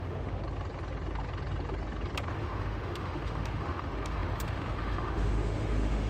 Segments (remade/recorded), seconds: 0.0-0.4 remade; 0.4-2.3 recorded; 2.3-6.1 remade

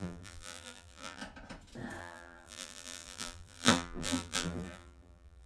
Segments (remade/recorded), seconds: 0.0-1.2 remade; 1.2-2.0 recorded; 2.0-5.5 remade

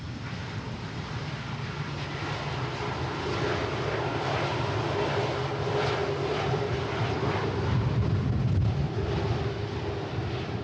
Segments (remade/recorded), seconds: 0.0-10.6 recorded

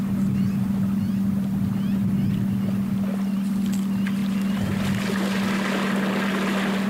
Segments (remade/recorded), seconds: 0.0-6.9 recorded

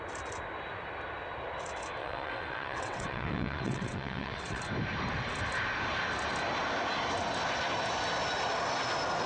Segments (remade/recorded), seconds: 0.0-2.0 recorded; 2.0-4.6 remade; 4.6-9.3 recorded

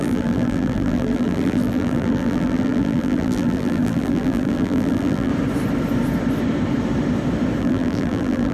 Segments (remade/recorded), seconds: 0.0-5.3 remade; 5.3-7.6 recorded; 7.6-8.5 remade

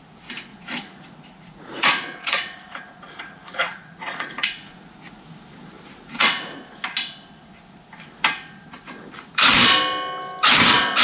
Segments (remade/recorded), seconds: 0.0-0.5 recorded; 0.5-5.4 remade; 5.4-6.0 recorded; 6.0-6.6 remade; 6.6-11.0 recorded